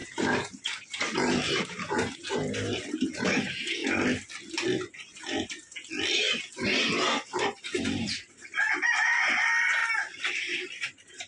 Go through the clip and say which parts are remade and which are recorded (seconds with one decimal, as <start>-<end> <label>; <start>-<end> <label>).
0.0-3.8 remade; 3.8-7.4 recorded; 7.4-9.8 remade; 9.8-10.3 recorded; 10.3-11.3 remade